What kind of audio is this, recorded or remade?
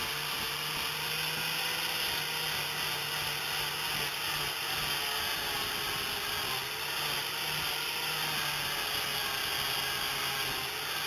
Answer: recorded